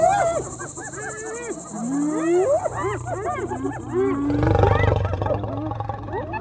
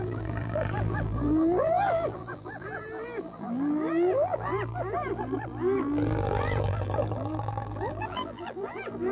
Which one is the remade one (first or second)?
second